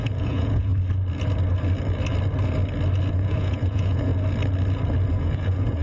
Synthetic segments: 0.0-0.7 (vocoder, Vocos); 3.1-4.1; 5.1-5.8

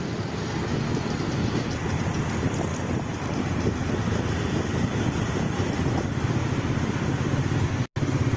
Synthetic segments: 6.4-7.7 (vocoder, BigVGAN v2)

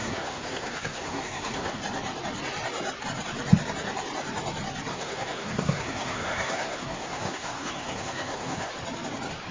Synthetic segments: 0.0-1.8 (codec, SNAC); 4.9-8.7

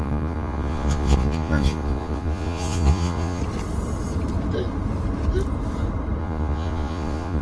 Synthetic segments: 0.0-3.4 (vocoder, Vocos); 6.2-7.4

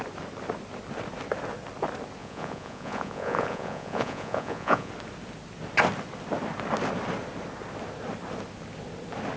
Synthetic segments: 2.2-4.9 (vocoder, Vocos)

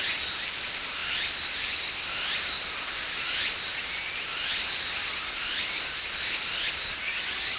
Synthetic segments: none

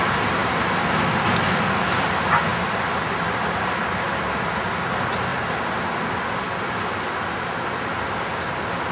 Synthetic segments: none

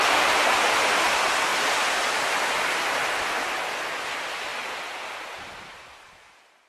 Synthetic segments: none